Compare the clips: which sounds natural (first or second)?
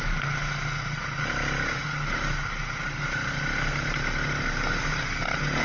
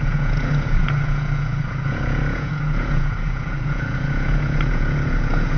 first